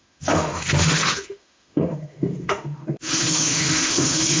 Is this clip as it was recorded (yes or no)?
no